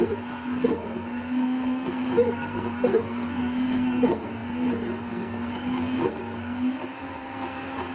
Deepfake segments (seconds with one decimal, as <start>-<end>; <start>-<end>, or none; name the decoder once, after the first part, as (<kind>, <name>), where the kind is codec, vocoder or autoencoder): 0.0-7.9 (codec, SNAC)